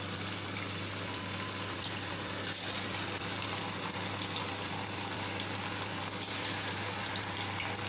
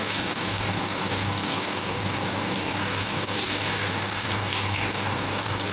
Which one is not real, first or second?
second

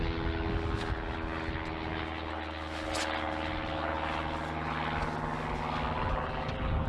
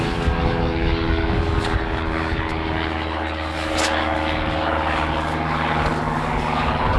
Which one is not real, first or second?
second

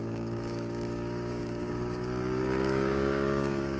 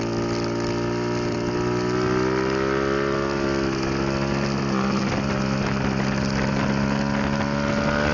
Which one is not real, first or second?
first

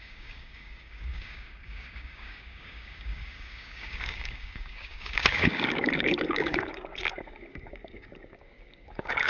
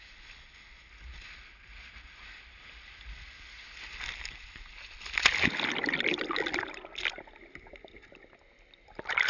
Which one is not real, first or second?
first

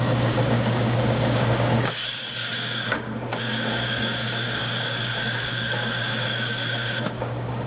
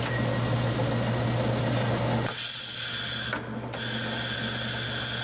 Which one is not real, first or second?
first